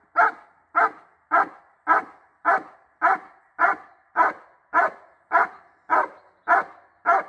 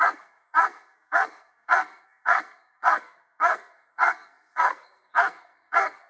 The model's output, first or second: second